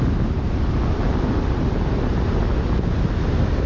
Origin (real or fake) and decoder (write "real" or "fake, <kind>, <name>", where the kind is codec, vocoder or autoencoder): real